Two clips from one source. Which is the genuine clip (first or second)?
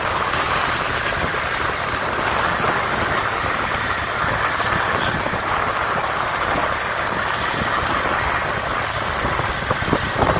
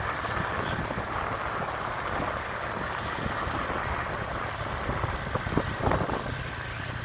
second